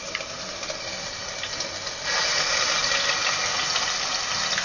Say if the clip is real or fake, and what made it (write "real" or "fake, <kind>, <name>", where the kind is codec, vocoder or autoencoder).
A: real